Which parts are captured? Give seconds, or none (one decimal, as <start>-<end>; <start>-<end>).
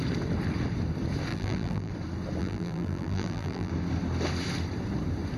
0.0-1.3; 1.9-2.4; 3.7-5.4